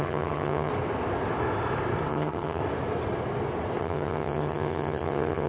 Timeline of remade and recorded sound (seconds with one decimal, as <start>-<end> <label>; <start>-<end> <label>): 0.0-0.7 remade; 0.7-2.1 recorded; 2.1-2.6 remade; 2.6-3.8 recorded; 3.8-5.5 remade